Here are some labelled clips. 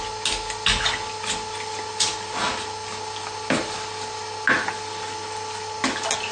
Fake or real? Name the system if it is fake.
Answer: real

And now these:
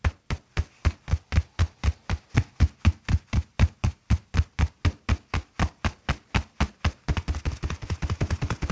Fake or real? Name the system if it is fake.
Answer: real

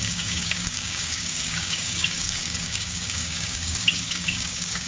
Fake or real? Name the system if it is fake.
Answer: fake, codec, DAC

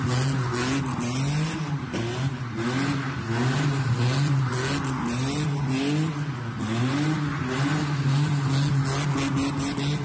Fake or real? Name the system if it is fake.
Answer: real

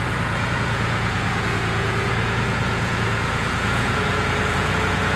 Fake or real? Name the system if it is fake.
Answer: fake, vocoder, Vocos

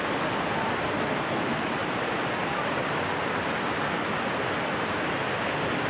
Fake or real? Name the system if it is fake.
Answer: real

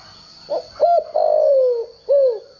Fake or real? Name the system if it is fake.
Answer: real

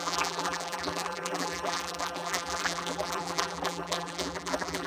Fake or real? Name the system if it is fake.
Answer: fake, vocoder, BigVGAN v2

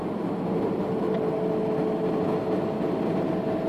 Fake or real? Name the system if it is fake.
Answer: real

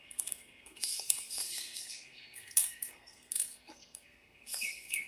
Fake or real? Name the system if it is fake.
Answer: fake, codec, SNAC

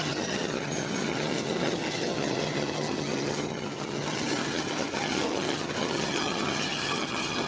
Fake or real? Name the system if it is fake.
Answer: fake, vocoder, HiFi-GAN